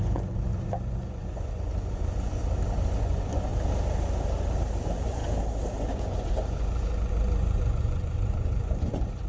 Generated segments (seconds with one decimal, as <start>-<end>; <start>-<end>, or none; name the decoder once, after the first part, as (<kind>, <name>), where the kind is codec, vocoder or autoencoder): 0.0-2.4 (vocoder, Vocos); 3.0-3.5; 4.8-5.2; 5.8-9.3